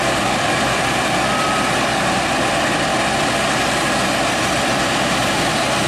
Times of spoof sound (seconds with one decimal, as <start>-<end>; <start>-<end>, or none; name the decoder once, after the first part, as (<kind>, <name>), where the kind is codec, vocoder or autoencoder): 0.0-2.9 (vocoder, BigVGAN v2); 4.3-5.9